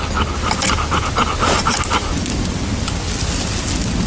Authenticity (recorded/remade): recorded